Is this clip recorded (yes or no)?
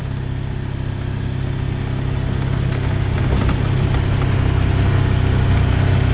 yes